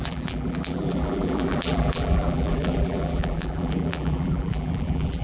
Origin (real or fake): fake